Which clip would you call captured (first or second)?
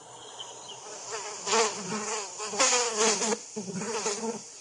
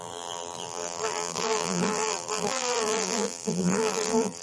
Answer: first